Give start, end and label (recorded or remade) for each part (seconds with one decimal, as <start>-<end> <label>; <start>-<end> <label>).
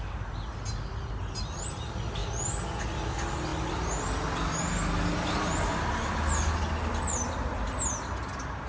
0.0-8.7 recorded